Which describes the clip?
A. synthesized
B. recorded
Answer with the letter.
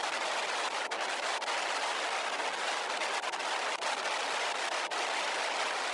B